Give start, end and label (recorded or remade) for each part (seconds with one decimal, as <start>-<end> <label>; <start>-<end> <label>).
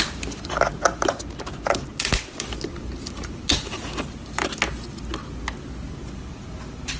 0.0-7.0 recorded